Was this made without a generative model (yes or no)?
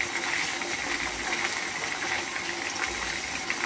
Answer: yes